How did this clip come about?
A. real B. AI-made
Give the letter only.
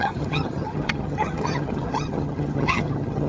B